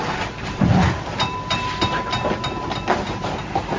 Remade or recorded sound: recorded